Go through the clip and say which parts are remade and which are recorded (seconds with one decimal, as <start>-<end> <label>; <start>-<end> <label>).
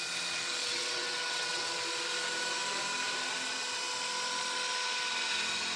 0.0-0.6 recorded; 0.6-1.7 remade; 1.7-5.8 recorded